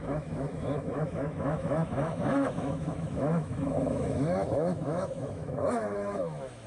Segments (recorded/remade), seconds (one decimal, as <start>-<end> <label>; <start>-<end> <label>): 0.0-6.7 remade